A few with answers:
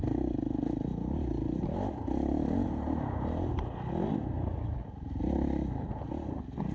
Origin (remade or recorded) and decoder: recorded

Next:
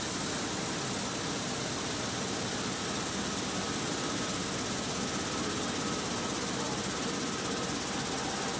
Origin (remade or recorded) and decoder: recorded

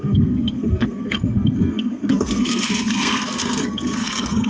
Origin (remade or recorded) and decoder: remade, codec, SNAC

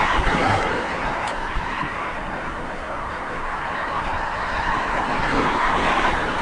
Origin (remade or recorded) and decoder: remade, codec, SNAC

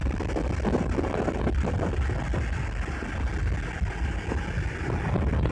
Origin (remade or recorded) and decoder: recorded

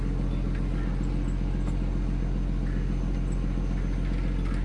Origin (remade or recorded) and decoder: recorded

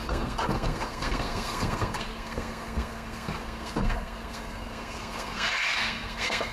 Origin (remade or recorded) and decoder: remade, codec, SNAC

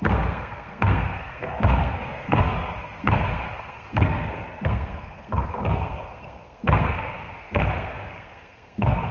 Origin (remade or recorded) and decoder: remade, codec, SNAC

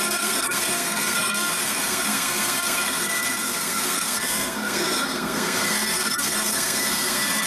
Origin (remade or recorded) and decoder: remade, codec, SNAC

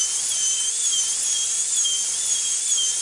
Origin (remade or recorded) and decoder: recorded